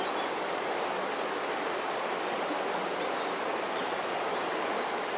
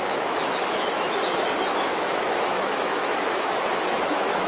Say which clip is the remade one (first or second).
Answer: second